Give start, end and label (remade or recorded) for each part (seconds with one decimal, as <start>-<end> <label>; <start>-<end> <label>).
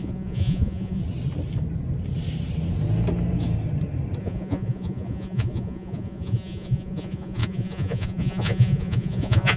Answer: 0.0-1.0 remade; 1.0-4.2 recorded; 4.2-9.6 remade